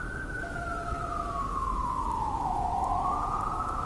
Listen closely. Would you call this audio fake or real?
fake